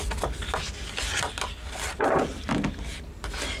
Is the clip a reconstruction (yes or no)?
no